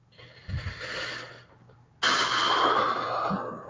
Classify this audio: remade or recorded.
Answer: recorded